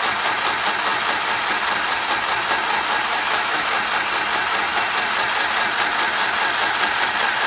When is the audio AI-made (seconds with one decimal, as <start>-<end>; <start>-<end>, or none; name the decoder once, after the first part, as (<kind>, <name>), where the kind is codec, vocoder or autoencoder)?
3.1-3.7 (autoencoder, DAC-VAE)